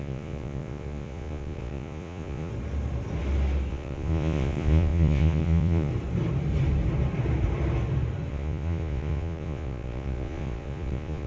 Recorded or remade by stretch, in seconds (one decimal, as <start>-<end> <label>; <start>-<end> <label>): 0.0-2.5 remade; 2.5-3.7 recorded; 3.7-5.9 remade; 5.9-8.3 recorded; 8.3-11.3 remade